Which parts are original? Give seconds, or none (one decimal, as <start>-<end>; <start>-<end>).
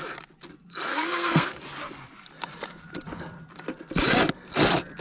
0.0-0.9; 1.6-5.0